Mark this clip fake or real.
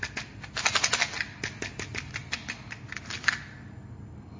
real